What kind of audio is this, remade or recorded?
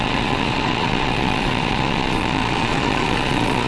remade